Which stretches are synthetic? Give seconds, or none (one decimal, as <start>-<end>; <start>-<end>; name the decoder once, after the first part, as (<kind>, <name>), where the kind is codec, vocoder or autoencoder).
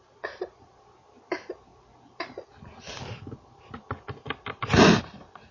none